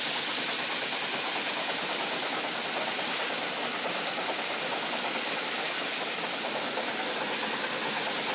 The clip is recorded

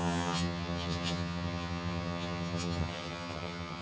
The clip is remade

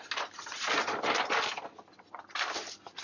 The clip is recorded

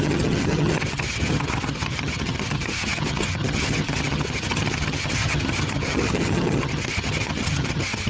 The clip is remade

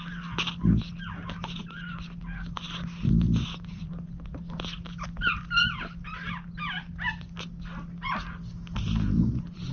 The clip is recorded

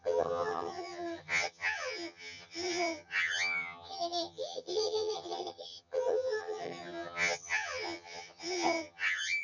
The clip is remade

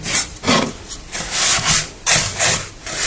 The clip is recorded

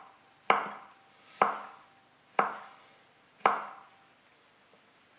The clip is recorded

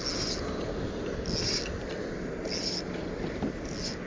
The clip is recorded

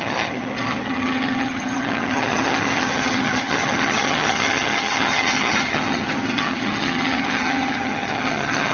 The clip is remade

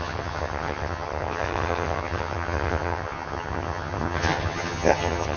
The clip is remade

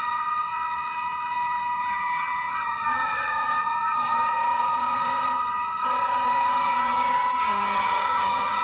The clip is remade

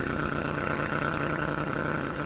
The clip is remade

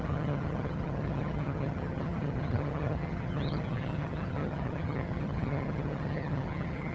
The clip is remade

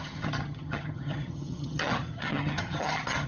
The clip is remade